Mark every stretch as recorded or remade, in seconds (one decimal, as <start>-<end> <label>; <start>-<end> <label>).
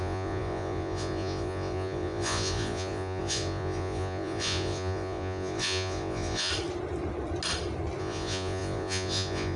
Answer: 0.0-6.5 remade; 6.5-8.0 recorded; 8.0-9.6 remade